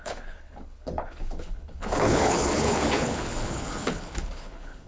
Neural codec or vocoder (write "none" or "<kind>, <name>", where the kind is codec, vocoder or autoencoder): codec, HILCodec